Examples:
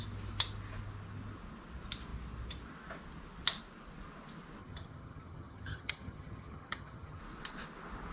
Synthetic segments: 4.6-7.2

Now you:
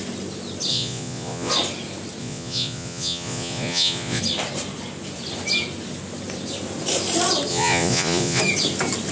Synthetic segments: 0.7-1.5; 2.2-4.2; 7.5-8.4